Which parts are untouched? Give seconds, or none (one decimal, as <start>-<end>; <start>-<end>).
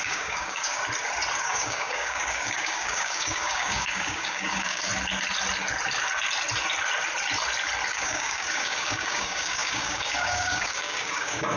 0.8-1.4; 4.9-7.9